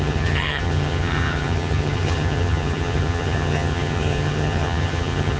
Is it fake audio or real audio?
fake